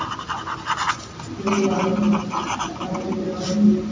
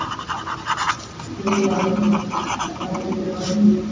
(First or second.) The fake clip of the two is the second